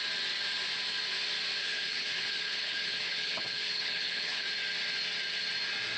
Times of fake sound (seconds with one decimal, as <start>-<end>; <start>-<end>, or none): 1.6-4.5